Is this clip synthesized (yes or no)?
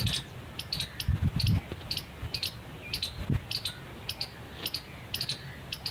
no